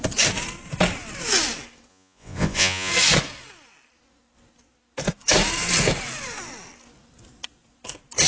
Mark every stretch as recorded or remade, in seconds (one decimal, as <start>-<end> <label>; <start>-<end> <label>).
0.0-1.9 recorded; 1.9-2.9 remade; 2.9-8.3 recorded